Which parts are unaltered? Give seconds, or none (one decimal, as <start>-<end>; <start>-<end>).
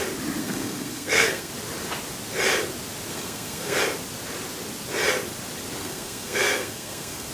0.0-0.4; 1.5-3.1; 3.8-5.8